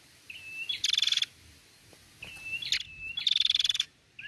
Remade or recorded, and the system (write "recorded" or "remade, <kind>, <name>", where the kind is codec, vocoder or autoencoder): recorded